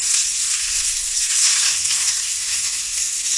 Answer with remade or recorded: remade